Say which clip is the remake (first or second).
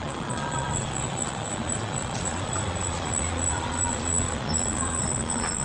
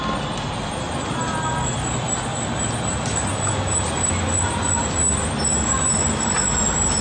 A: first